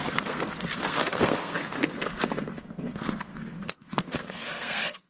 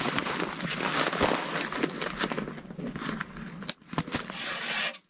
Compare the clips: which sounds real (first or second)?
second